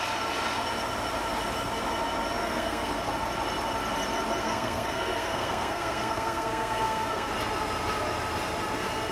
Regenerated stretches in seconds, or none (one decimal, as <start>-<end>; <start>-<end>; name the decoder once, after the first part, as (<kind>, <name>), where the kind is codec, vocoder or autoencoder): 2.4-3.1 (codec, SNAC); 4.4-7.3

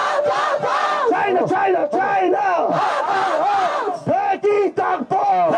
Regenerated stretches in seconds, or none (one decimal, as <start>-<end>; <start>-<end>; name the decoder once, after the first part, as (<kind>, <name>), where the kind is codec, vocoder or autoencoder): 1.4-1.8 (vocoder, BigVGAN v2); 3.0-4.0

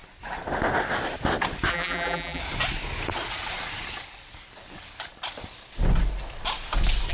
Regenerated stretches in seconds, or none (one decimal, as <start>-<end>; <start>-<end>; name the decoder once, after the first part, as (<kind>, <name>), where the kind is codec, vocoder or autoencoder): 1.7-2.4 (vocoder, BigVGAN v2)

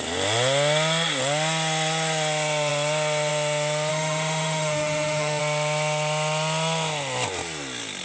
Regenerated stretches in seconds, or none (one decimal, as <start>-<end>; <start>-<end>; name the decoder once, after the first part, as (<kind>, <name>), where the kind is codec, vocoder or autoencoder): 3.9-5.4 (autoencoder, DAC-VAE)

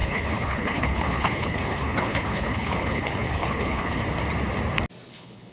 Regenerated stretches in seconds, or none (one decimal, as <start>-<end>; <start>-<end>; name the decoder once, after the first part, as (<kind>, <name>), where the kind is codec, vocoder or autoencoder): 0.0-4.0 (codec, HILCodec); 5.1-5.5